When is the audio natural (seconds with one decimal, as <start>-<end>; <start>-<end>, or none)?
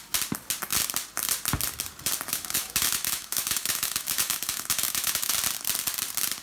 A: 0.0-2.3; 5.3-6.4